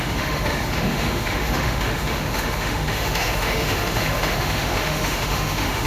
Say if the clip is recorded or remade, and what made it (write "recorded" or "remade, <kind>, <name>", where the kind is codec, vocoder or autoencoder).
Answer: remade, autoencoder, DAC-VAE